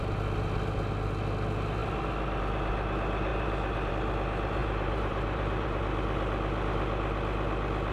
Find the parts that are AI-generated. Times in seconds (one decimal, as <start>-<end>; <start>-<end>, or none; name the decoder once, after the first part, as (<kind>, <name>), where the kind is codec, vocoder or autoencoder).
3.3-3.9 (vocoder, BigVGAN v2); 4.6-5.8